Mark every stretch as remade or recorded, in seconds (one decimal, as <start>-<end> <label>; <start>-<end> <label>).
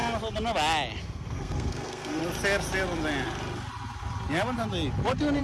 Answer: 0.0-1.0 recorded; 1.0-2.2 remade; 2.2-5.4 recorded